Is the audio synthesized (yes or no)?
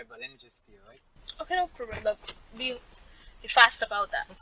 no